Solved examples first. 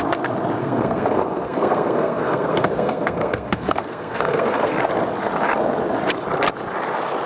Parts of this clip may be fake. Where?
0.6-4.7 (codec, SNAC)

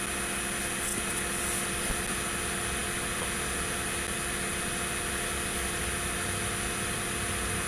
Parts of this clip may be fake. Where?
none

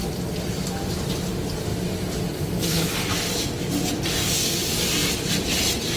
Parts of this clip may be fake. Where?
0.0-1.0 (vocoder, BigVGAN v2); 5.0-5.5